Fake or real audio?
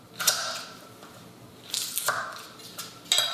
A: real